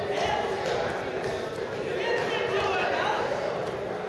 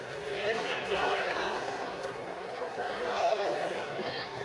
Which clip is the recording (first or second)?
first